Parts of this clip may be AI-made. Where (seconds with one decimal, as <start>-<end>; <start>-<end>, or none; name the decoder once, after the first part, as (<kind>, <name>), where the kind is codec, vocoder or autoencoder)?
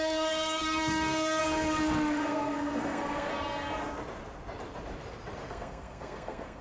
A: 0.0-3.3 (codec, SNAC); 5.5-6.6